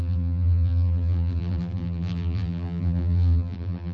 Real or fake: fake